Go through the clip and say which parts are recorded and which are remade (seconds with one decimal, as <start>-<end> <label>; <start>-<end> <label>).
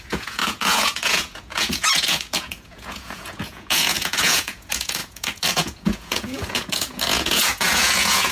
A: 0.0-8.3 remade